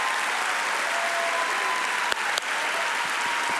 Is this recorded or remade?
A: recorded